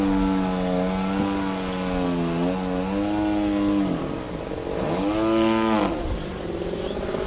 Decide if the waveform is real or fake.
real